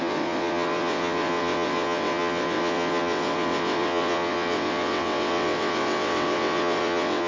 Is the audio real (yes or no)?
no